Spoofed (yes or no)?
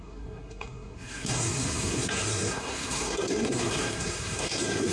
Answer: yes